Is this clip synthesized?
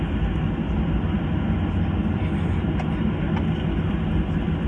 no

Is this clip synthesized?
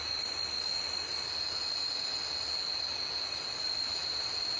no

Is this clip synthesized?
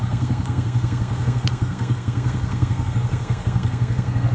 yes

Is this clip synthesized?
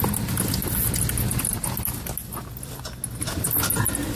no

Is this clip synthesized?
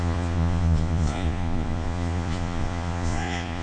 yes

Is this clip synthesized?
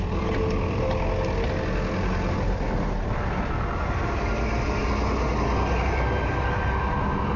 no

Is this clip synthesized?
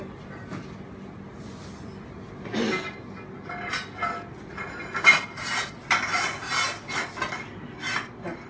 no